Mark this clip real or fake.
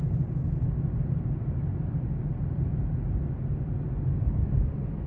real